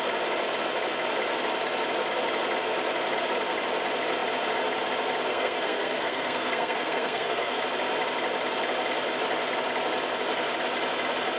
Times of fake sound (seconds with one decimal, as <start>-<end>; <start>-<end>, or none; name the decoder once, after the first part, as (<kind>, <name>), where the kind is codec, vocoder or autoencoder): 5.3-7.6 (codec, SNAC)